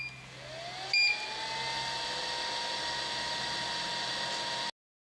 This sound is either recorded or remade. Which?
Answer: recorded